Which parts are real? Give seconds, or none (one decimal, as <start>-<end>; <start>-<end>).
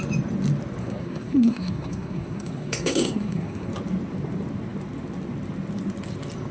0.0-0.8; 3.7-6.5